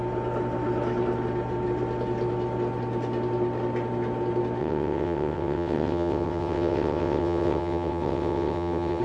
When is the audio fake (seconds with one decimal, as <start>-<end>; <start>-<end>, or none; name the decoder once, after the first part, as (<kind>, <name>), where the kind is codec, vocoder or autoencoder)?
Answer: 4.6-9.0 (vocoder, WaveNeXt)